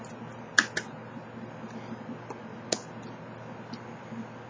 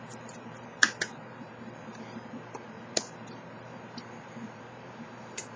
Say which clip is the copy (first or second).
second